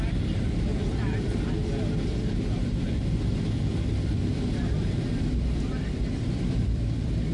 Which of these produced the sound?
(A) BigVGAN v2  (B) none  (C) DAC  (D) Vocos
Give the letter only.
A